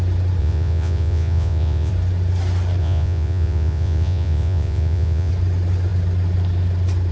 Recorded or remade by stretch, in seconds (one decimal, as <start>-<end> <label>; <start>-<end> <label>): 0.0-0.4 recorded; 0.4-1.9 remade; 1.9-2.8 recorded; 2.8-5.3 remade; 5.3-7.1 recorded